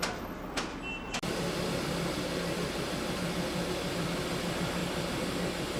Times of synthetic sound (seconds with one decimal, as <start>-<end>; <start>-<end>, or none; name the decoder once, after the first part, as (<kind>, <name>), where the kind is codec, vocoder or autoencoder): none